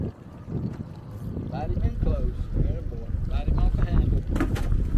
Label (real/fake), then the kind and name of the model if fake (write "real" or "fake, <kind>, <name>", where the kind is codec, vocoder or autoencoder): real